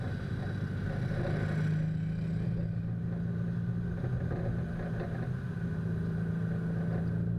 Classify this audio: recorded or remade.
recorded